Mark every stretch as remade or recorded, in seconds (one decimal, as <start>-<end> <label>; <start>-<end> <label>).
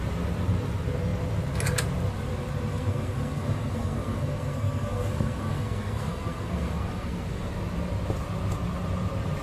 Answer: 0.0-2.7 recorded; 2.7-7.5 remade; 7.5-9.4 recorded